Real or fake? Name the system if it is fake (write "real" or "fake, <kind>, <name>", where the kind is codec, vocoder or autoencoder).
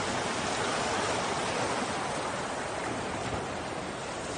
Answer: real